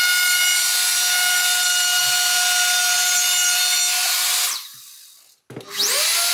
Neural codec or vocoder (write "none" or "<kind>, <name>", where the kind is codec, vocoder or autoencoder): none